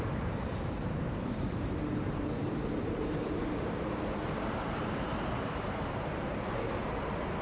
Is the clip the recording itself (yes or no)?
no